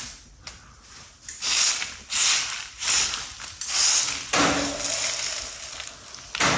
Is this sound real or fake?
real